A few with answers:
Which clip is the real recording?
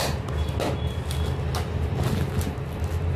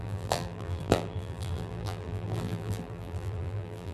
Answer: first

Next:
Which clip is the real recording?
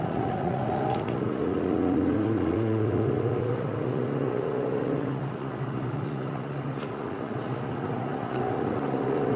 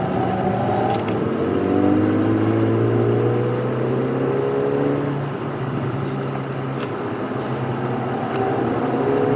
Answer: second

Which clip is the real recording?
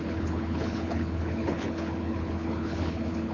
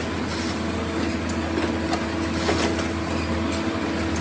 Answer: second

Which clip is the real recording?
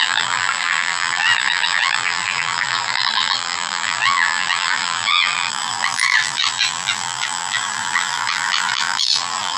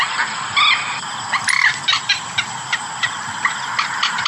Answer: second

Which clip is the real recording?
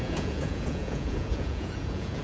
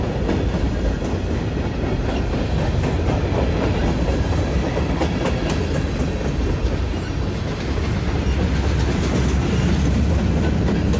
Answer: second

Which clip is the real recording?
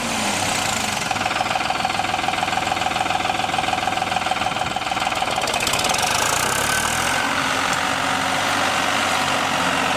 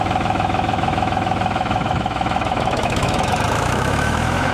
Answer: first